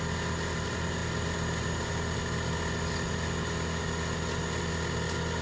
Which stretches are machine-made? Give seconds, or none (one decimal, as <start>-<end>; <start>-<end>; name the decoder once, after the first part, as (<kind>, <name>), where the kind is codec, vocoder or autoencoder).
none

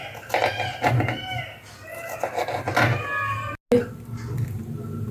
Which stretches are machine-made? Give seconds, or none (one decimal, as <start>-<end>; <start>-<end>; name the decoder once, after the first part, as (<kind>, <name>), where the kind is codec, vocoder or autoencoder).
none

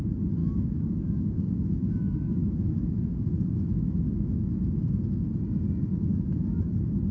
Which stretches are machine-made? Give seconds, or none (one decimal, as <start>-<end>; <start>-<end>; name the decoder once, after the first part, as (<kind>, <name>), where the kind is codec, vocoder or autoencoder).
0.4-4.6 (autoencoder, DAC-VAE); 6.1-6.6

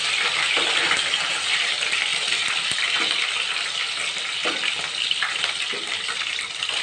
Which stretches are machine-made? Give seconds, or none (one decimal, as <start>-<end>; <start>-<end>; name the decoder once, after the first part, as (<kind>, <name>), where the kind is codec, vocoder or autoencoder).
none